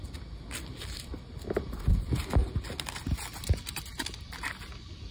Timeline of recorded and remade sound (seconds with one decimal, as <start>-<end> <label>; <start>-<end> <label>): 0.0-5.1 recorded